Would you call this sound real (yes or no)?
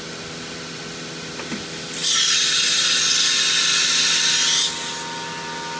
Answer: yes